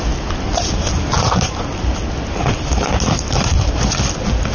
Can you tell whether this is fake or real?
real